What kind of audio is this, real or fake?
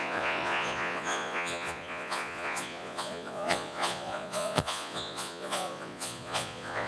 fake